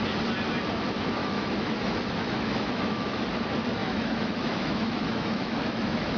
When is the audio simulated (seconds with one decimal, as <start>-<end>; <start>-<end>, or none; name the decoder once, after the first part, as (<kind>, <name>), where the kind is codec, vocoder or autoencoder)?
1.2-3.2 (autoencoder, DAC-VAE); 3.8-6.2